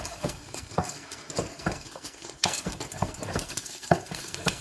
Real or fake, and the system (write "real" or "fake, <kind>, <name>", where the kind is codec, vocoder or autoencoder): fake, codec, SNAC